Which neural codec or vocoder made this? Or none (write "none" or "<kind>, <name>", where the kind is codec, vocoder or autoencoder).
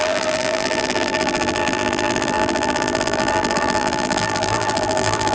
vocoder, BigVGAN v2